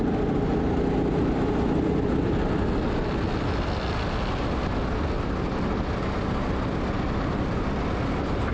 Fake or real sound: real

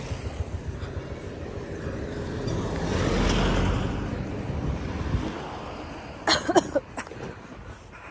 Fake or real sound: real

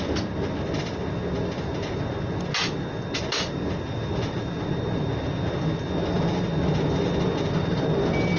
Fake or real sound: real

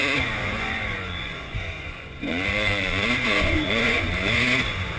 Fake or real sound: fake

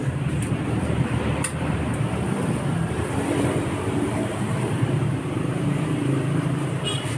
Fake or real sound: fake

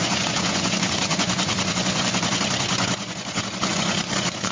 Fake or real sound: fake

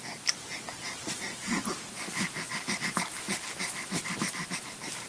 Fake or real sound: real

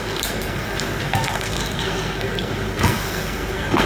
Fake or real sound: fake